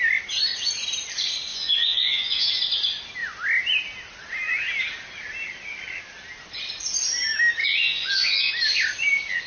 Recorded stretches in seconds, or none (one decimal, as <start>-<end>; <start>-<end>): 0.0-1.5; 2.5-7.6; 8.5-9.5